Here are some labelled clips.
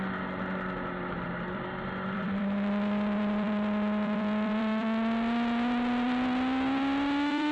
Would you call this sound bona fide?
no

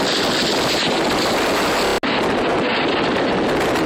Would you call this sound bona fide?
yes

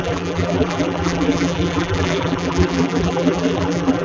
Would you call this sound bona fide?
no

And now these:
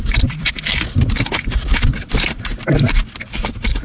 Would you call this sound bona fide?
no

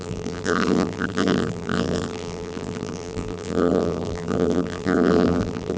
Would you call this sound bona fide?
no